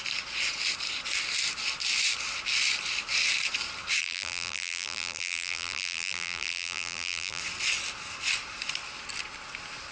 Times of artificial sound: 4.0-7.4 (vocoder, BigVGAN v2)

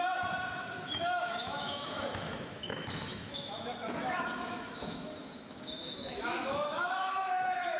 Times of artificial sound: 0.0-7.8 (autoencoder, DAC-VAE)

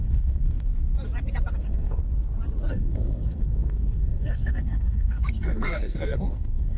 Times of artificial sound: 0.0-0.7 (codec, SNAC); 1.6-2.0; 2.7-6.8

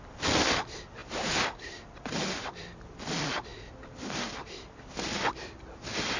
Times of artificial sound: 1.0-3.0 (vocoder, BigVGAN v2)